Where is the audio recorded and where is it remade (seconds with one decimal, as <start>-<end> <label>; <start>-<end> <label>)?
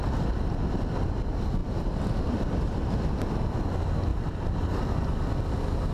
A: 0.0-1.6 recorded; 1.6-2.5 remade; 2.5-4.1 recorded; 4.1-4.8 remade; 4.8-5.9 recorded